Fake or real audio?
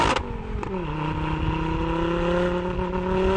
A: real